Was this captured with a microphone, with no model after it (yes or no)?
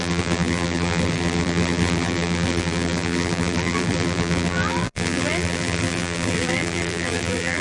no